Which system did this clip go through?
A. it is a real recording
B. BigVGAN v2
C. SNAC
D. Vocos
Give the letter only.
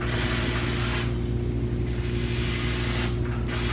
A